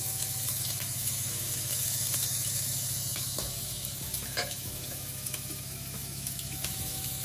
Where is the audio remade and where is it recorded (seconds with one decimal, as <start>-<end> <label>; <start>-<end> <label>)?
0.0-7.2 remade